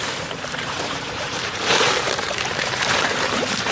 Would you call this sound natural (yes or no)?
no